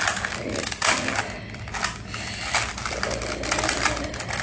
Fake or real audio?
real